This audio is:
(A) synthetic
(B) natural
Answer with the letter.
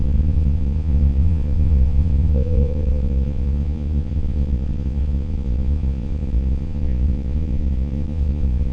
A